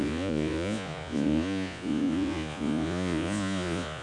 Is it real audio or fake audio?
fake